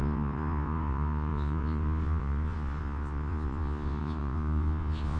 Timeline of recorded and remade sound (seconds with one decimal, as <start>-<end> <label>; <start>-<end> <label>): 0.0-5.2 remade